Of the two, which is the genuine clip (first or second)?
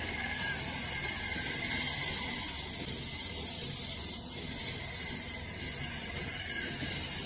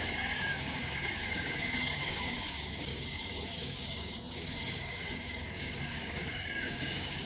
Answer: first